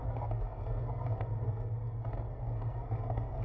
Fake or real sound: fake